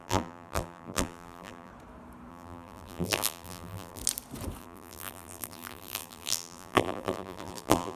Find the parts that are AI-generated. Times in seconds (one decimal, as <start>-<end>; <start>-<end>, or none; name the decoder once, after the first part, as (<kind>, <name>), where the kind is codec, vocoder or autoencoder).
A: 0.0-1.7 (vocoder, BigVGAN v2); 2.3-4.0; 4.6-8.0